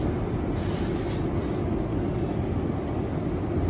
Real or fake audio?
real